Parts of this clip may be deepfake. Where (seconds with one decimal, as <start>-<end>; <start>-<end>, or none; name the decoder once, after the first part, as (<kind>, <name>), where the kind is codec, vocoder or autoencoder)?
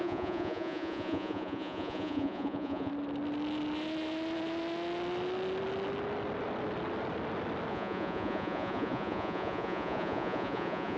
0.0-2.9 (vocoder, Vocos); 7.7-11.0